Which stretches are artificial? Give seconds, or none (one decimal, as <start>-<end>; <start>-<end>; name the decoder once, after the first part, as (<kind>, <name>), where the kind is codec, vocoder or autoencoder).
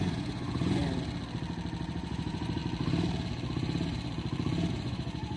0.0-0.8 (vocoder, Vocos); 1.9-2.6; 4.7-5.4